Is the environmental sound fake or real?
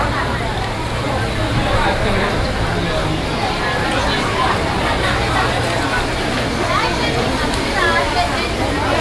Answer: real